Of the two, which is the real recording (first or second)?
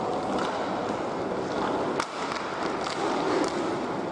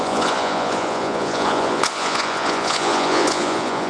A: first